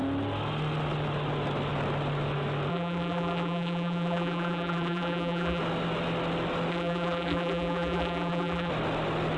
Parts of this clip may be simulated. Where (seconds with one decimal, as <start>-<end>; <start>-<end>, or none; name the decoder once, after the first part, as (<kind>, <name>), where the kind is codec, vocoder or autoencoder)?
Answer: 2.7-5.6 (vocoder, BigVGAN v2); 6.7-8.7